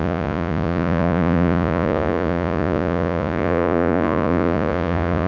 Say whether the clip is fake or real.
fake